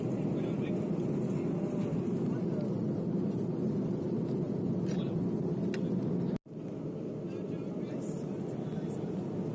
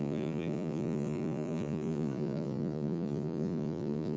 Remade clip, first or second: second